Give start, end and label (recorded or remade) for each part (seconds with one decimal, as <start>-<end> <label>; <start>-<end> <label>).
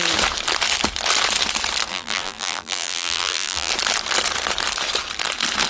0.0-1.9 recorded; 1.9-3.7 remade; 3.7-5.7 recorded